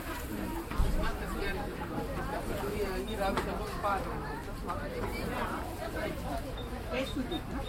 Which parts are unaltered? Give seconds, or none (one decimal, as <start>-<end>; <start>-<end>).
none